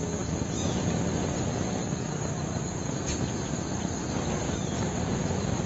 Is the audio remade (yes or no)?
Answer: no